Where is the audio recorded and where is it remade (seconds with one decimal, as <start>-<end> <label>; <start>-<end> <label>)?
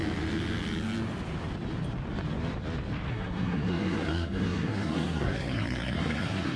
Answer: 0.0-3.1 recorded; 3.1-6.6 remade